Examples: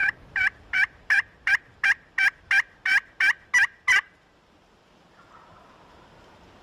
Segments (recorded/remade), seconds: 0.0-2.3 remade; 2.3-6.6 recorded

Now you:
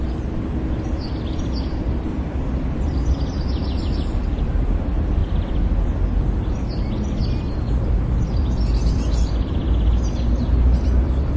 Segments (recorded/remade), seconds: 0.0-11.4 recorded

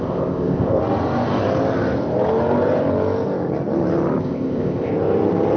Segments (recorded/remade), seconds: 0.0-0.8 remade; 0.8-4.2 recorded; 4.2-4.9 remade; 4.9-5.6 recorded

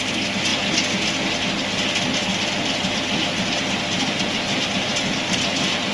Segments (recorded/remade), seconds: 0.0-2.3 recorded; 2.3-5.9 remade

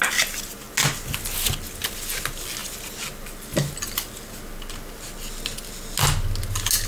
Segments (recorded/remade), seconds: 0.0-6.9 recorded

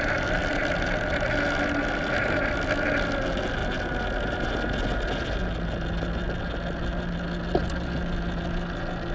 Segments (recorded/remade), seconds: 0.0-9.1 recorded